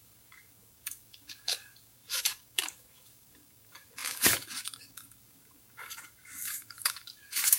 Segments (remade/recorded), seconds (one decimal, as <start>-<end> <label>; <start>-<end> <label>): 0.0-7.6 remade